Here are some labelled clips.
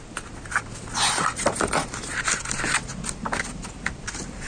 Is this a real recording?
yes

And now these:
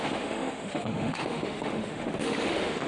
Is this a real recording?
no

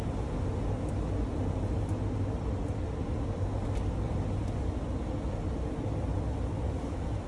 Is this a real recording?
yes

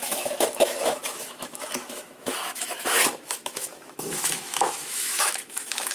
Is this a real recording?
no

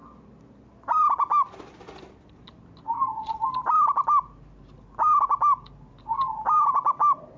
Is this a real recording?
yes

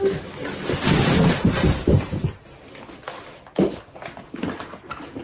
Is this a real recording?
yes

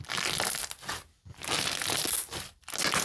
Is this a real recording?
yes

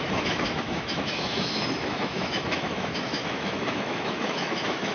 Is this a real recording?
no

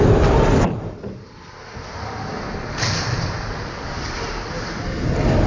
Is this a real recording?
yes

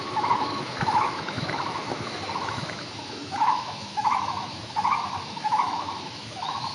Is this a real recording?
no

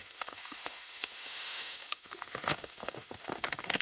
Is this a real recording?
no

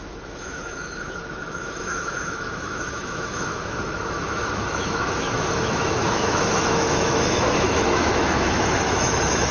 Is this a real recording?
no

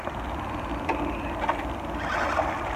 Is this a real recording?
yes